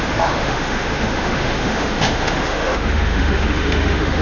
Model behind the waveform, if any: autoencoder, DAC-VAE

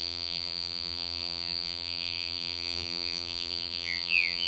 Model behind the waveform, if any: vocoder, BigVGAN v2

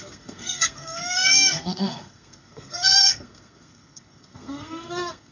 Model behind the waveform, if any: codec, SNAC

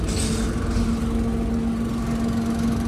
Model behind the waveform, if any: none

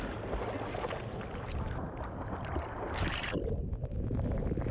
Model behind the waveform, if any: none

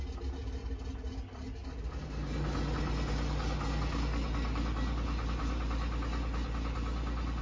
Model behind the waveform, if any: none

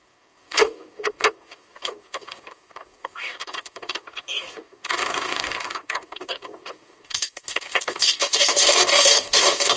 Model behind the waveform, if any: codec, DAC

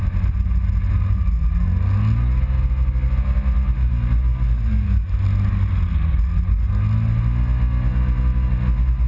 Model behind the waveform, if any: none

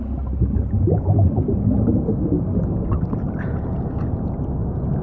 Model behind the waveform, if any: none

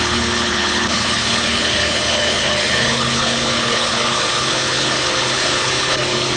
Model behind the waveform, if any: codec, HILCodec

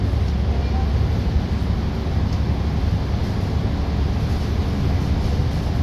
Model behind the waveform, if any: none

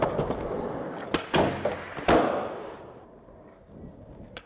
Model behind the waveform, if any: none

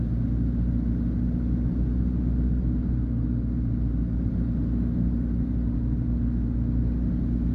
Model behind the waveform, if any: none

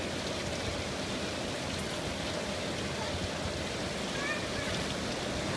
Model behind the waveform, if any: none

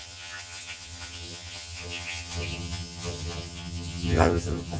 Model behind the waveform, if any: vocoder, HiFi-GAN